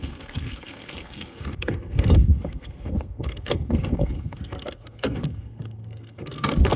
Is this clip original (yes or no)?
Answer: no